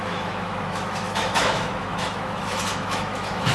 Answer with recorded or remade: remade